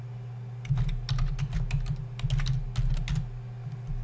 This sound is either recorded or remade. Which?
recorded